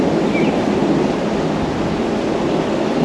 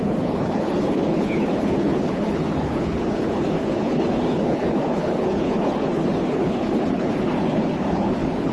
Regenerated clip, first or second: second